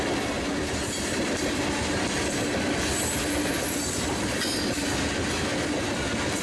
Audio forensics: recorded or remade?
recorded